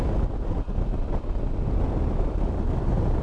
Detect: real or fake real